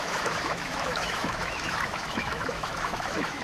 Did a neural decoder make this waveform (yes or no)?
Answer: yes